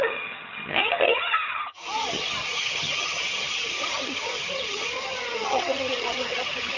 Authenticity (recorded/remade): remade